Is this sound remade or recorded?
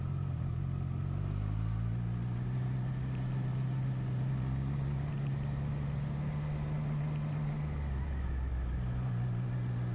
recorded